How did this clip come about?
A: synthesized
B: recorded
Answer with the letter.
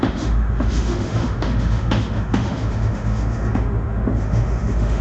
A